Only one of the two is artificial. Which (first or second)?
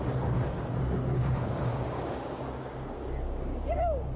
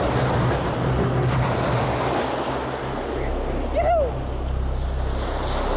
first